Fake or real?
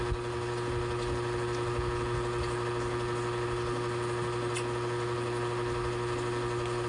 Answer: real